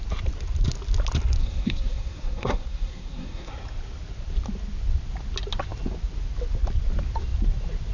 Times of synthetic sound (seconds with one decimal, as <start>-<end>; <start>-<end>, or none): 1.4-3.5